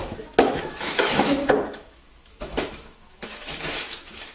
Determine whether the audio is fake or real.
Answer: fake